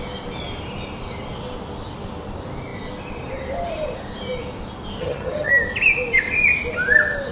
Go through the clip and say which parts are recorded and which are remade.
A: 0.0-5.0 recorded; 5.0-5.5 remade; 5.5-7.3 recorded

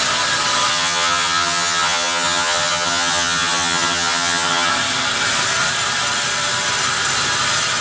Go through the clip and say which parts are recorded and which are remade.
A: 0.0-0.7 recorded; 0.7-4.7 remade; 4.7-7.8 recorded

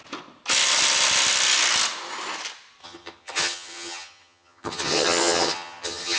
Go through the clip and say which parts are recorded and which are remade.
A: 0.0-2.8 recorded; 2.8-6.2 remade

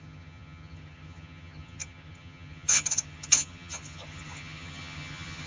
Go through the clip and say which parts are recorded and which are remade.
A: 0.0-5.5 remade